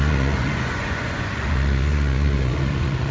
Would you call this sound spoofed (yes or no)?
yes